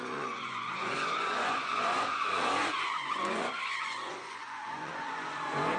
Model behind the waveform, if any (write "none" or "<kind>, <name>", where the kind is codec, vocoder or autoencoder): vocoder, Vocos